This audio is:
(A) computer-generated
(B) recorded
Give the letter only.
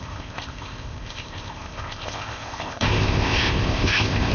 A